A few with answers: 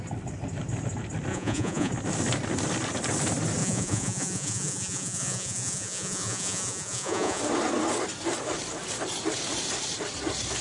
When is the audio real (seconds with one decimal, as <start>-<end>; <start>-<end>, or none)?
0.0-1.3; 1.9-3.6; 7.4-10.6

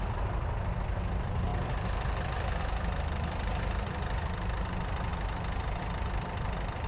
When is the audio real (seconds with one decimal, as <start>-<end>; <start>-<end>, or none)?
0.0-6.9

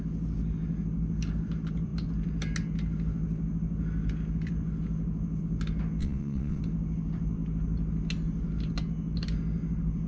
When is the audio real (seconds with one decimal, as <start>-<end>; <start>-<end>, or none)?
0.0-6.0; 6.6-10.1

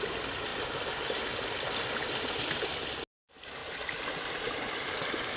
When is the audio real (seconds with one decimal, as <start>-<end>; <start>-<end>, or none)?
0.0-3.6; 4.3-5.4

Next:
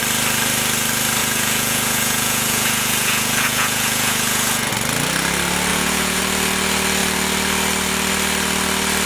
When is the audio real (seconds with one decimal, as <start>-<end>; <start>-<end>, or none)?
0.0-1.2; 4.7-5.7; 6.2-9.1